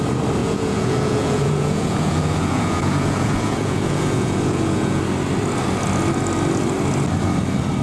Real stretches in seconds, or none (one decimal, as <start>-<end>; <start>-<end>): 0.0-0.4; 5.0-7.8